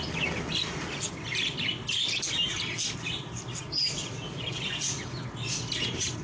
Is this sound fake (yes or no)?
no